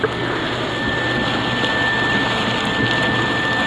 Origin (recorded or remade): recorded